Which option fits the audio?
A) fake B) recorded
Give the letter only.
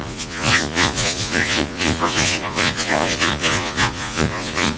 A